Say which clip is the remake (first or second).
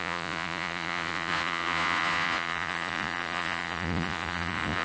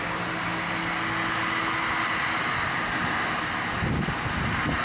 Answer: first